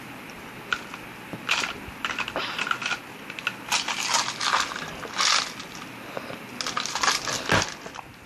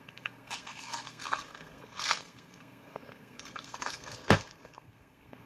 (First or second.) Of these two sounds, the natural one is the first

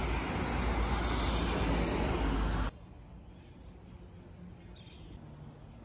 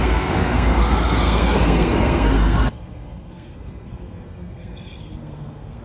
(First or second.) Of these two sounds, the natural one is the first